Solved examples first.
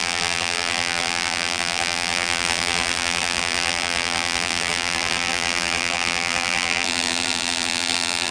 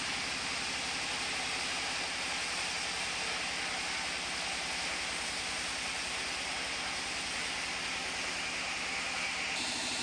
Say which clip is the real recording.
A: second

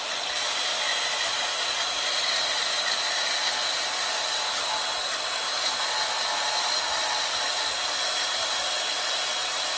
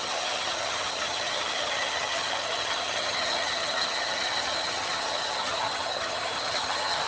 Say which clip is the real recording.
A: first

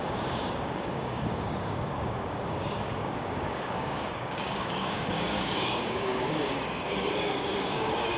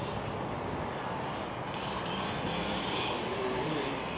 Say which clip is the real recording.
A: second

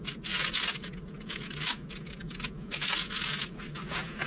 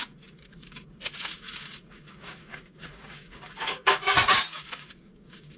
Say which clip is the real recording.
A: first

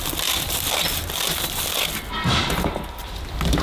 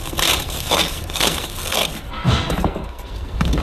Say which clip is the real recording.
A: first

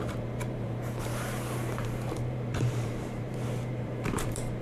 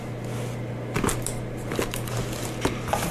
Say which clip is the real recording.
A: second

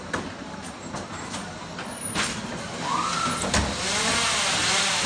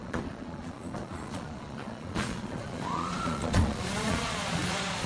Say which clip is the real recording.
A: first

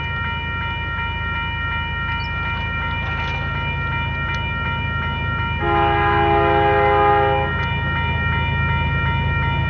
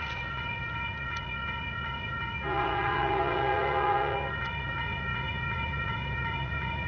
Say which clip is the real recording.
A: first